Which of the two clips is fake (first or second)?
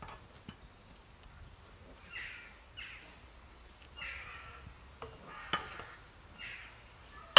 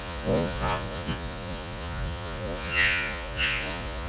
second